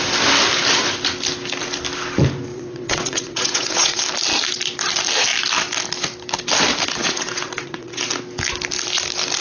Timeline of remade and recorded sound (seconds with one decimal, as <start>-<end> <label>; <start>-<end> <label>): 0.0-2.5 recorded; 2.5-4.0 remade; 4.0-7.0 recorded; 7.0-8.0 remade; 8.0-9.4 recorded